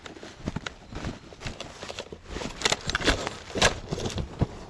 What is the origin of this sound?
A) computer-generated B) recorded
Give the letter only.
B